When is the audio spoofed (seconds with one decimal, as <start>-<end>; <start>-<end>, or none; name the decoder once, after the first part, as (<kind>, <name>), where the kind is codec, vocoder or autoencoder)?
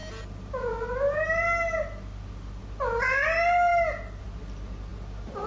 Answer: none